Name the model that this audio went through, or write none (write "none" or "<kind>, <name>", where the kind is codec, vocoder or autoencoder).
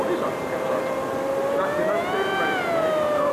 none